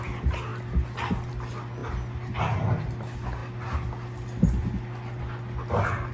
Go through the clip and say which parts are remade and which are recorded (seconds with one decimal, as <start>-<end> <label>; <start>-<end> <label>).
0.0-6.1 recorded